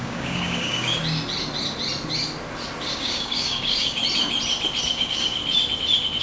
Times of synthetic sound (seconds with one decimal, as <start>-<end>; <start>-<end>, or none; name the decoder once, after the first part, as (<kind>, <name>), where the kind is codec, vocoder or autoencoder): 0.0-1.0 (codec, DAC); 2.9-4.0; 4.9-5.4